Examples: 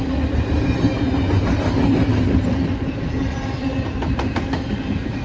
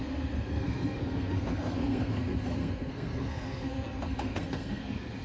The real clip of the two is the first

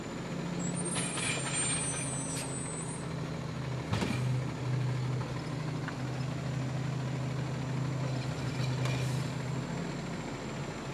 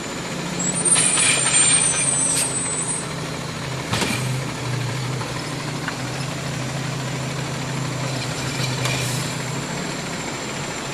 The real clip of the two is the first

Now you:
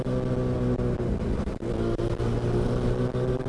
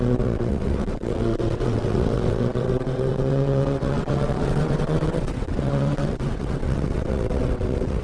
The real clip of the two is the first